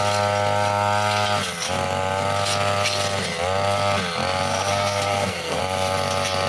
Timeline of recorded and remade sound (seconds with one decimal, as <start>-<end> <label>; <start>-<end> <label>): 0.0-4.5 recorded; 4.5-5.6 remade; 5.6-6.5 recorded